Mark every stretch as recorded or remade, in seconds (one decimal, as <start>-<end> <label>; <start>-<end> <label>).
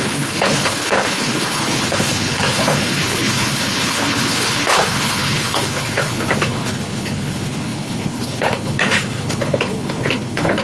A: 0.0-10.6 remade